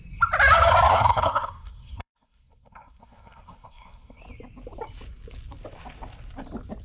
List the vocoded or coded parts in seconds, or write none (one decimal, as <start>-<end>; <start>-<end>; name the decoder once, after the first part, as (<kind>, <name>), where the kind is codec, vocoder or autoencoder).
0.9-4.2 (codec, SNAC)